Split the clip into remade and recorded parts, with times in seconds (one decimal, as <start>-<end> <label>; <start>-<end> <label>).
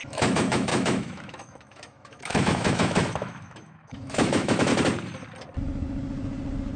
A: 0.0-4.7 remade; 4.7-6.8 recorded